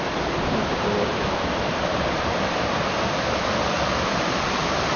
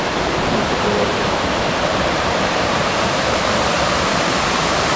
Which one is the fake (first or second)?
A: second